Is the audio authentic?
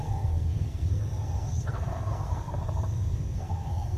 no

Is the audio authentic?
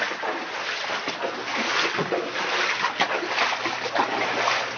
yes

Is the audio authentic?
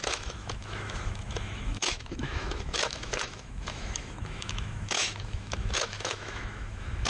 no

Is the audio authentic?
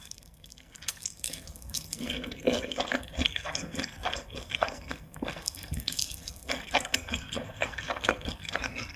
no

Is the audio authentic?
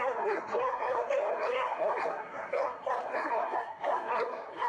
no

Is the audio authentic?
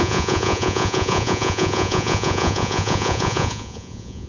no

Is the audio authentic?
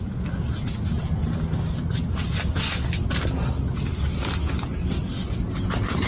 yes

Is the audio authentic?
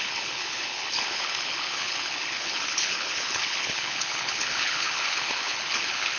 no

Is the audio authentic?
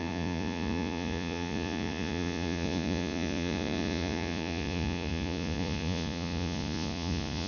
no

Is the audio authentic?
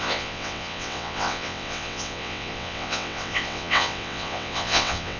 no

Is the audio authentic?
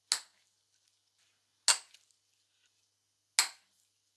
yes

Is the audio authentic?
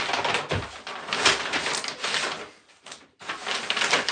yes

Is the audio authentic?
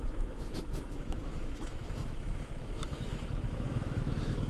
no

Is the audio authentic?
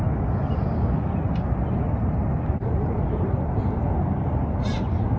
yes